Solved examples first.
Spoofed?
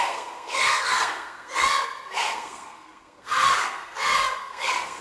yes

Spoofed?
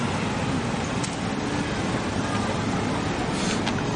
no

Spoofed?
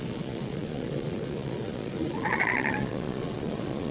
yes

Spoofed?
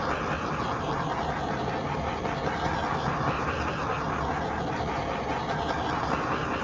no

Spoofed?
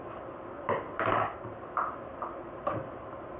no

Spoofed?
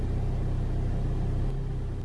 no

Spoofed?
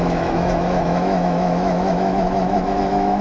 yes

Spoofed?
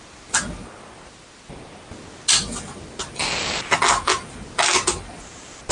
no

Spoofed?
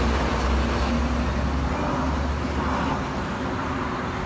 no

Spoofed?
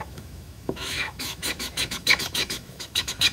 yes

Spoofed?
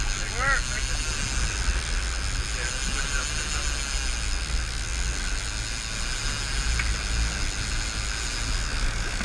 no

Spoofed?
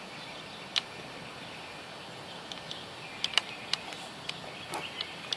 no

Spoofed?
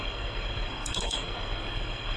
yes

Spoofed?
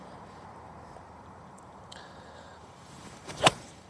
yes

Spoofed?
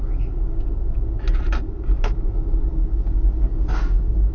no